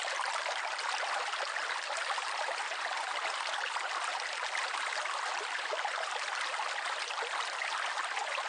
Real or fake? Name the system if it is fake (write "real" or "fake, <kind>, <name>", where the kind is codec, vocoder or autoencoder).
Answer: real